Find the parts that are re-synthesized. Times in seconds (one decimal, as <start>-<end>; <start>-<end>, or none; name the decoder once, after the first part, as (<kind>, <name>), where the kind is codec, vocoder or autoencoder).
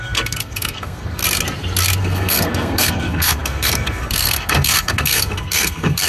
0.0-1.2 (codec, SNAC); 2.0-6.1